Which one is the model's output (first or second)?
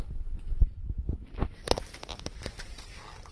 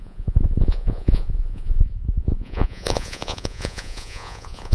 second